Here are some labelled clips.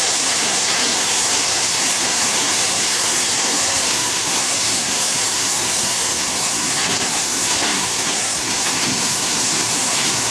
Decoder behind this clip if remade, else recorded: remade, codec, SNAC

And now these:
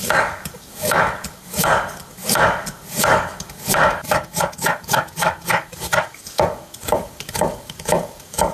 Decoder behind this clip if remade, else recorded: remade, codec, DAC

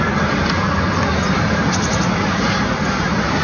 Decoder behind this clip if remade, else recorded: recorded